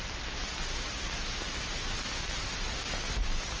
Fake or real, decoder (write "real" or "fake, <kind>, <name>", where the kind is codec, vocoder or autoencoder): real